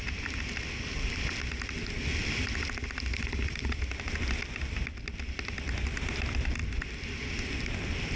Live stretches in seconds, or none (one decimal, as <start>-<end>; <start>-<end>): 0.0-8.2